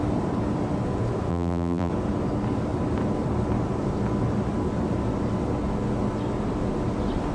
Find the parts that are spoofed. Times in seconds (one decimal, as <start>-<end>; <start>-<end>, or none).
1.3-1.9